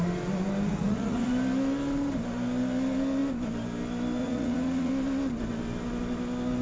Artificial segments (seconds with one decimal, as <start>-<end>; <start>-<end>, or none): 0.7-1.3; 4.2-4.9